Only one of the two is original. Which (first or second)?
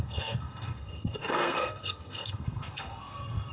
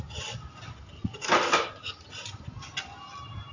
second